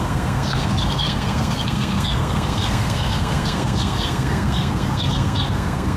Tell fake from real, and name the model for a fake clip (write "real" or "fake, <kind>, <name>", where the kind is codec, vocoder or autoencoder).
fake, codec, SNAC